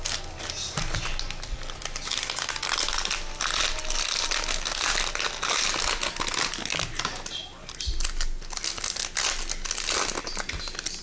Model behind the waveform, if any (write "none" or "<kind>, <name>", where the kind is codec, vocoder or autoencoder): none